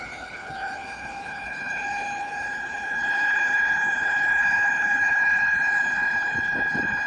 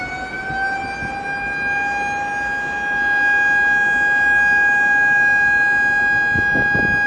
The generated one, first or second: first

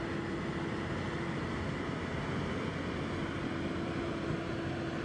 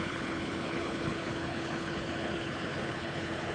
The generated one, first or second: second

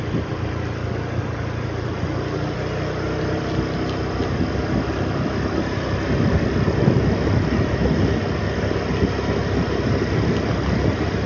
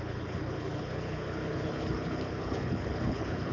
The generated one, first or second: second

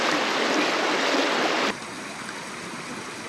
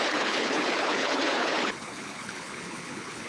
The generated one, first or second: second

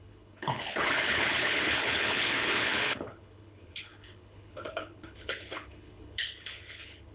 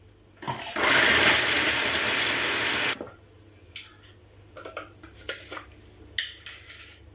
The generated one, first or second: first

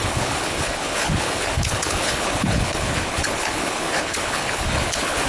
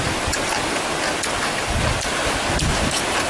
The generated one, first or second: first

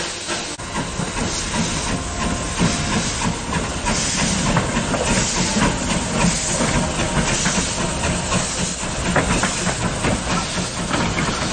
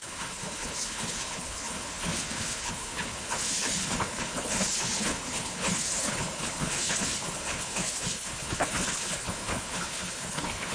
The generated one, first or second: second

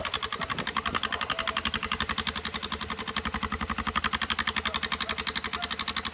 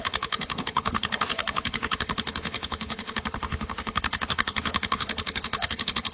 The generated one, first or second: second